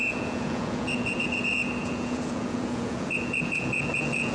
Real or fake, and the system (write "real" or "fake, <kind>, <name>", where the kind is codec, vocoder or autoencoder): fake, vocoder, Vocos